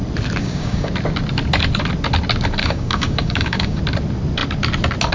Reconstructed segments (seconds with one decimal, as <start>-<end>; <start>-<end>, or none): 0.4-0.9; 2.6-3.8